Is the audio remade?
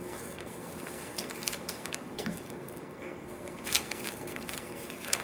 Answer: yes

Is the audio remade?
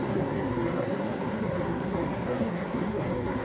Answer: yes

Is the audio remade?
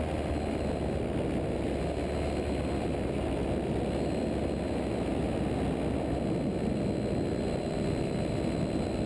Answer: no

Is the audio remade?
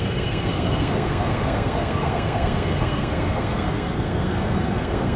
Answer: yes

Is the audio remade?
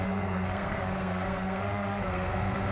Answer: yes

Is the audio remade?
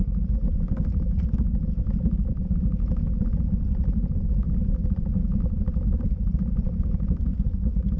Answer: no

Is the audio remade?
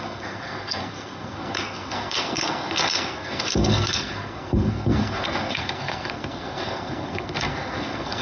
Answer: yes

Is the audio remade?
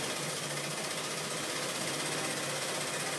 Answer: no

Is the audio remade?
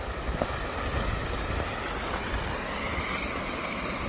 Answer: no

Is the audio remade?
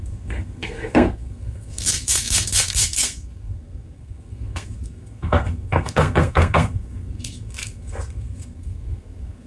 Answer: yes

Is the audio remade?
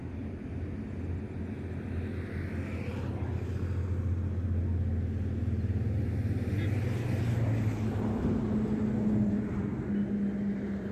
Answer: no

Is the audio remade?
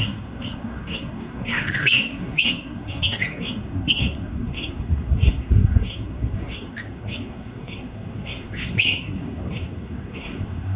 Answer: yes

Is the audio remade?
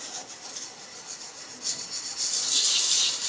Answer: no